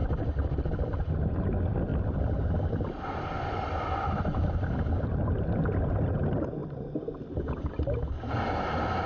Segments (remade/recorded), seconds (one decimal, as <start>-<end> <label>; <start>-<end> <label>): 0.0-1.9 recorded; 1.9-5.9 remade; 5.9-6.6 recorded; 6.6-7.5 remade; 7.5-9.1 recorded